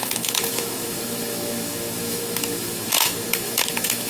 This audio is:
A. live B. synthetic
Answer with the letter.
B